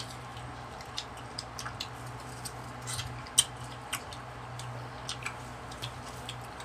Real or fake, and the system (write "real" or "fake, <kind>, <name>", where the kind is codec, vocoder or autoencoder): real